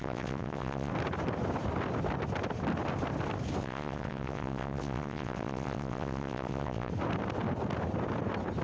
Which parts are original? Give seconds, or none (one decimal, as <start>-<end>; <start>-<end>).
0.9-3.6; 6.9-8.6